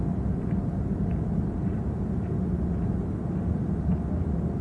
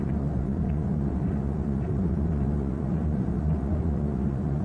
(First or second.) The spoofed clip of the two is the second